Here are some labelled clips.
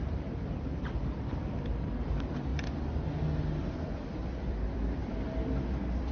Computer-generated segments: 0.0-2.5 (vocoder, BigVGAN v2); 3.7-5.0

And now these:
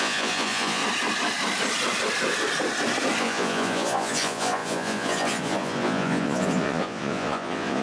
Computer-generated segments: 0.0-0.8 (vocoder, Vocos); 3.2-7.8

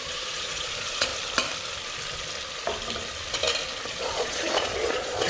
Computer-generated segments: 0.0-1.1 (vocoder, Vocos); 3.9-5.3

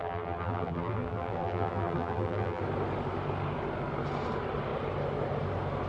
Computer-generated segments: 0.0-2.6 (vocoder, BigVGAN v2)

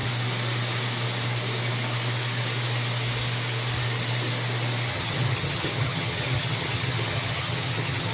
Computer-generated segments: 4.9-8.1 (vocoder, HiFi-GAN)

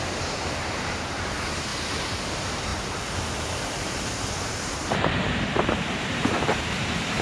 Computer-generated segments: 0.0-1.7 (vocoder, BigVGAN v2); 2.3-7.2